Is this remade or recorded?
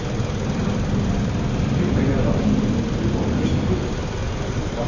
recorded